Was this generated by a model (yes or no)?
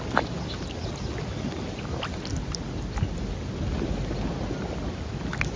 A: no